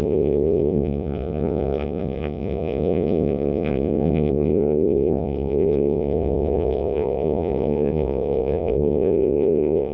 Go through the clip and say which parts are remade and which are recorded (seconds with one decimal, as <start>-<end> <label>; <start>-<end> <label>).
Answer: 0.0-9.9 remade